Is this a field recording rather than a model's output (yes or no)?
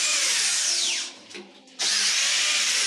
no